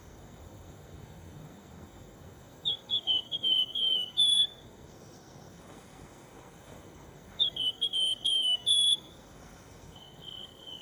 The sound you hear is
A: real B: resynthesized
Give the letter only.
B